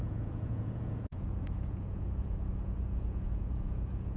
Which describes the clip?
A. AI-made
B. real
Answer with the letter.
A